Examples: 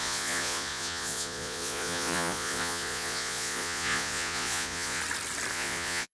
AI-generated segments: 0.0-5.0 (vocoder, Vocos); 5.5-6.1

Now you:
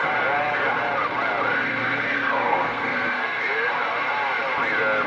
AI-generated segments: 1.8-3.4 (codec, SNAC)

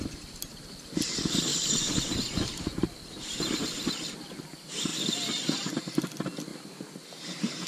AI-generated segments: 1.5-3.9 (vocoder, BigVGAN v2); 4.9-5.7; 6.5-7.2

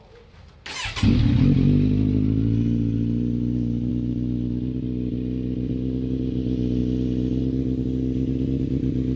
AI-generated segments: none

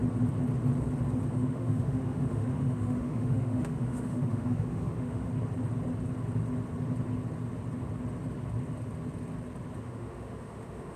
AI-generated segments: 1.3-5.3 (autoencoder, DAC-VAE); 9.8-11.0